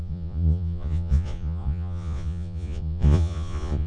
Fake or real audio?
fake